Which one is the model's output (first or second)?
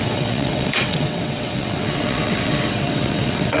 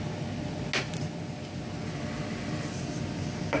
first